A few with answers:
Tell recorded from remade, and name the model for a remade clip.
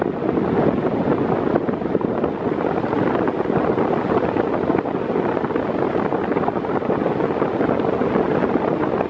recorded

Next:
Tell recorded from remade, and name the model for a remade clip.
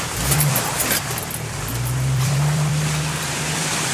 remade, vocoder, BigVGAN v2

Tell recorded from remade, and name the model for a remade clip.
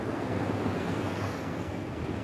remade, codec, SNAC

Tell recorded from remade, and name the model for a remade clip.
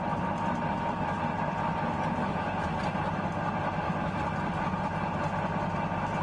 recorded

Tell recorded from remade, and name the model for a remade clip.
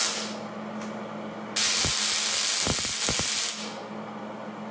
recorded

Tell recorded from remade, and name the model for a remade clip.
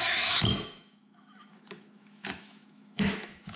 remade, autoencoder, DAC-VAE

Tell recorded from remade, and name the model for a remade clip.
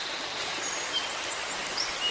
recorded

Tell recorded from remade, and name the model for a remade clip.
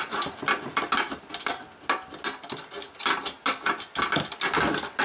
recorded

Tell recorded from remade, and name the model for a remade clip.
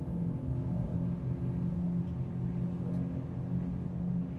recorded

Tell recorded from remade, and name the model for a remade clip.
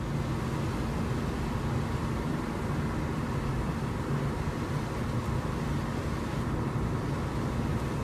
recorded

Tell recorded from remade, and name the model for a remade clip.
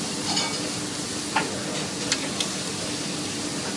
recorded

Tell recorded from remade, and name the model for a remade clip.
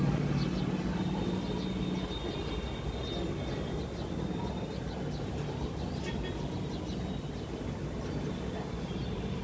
recorded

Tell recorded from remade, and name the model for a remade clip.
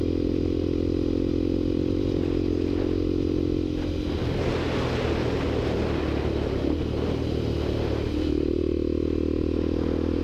recorded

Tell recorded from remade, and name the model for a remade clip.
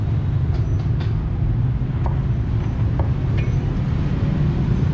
recorded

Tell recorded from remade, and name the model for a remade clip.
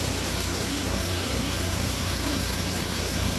remade, codec, SNAC